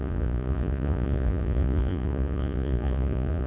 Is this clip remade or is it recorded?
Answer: remade